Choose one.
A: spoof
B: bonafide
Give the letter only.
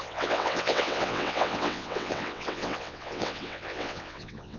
A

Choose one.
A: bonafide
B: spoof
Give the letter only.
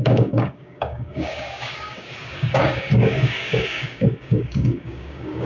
B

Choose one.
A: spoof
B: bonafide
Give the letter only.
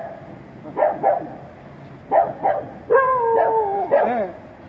B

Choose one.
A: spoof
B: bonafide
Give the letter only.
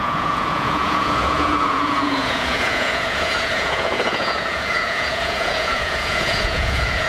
A